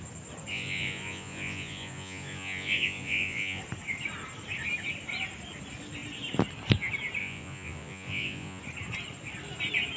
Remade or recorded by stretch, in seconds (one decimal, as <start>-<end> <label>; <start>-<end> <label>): 0.0-0.5 recorded; 0.5-3.6 remade; 3.6-7.2 recorded; 7.2-8.6 remade; 8.6-10.0 recorded